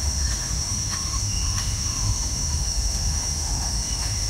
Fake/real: fake